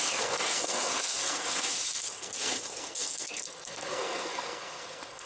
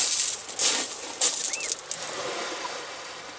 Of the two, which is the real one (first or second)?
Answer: second